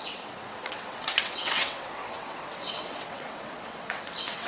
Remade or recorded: remade